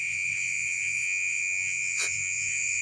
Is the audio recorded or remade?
remade